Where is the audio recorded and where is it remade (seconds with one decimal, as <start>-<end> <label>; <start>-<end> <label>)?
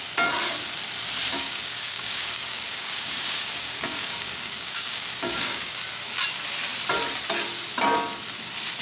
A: 0.0-1.3 recorded; 1.3-5.8 remade; 5.8-8.8 recorded